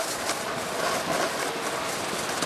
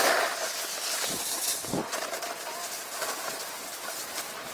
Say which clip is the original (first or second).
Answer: first